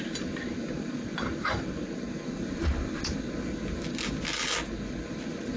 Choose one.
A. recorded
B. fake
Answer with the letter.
A